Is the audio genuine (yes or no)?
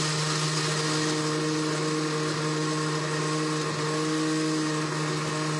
yes